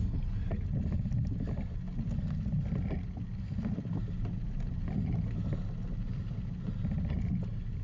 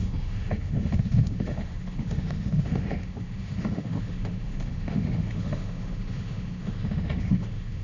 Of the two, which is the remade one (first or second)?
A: second